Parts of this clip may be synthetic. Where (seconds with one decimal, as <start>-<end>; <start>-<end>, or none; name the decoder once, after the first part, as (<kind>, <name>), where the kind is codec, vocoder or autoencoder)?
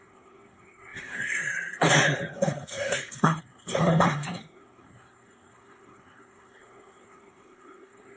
0.0-8.2 (codec, SNAC)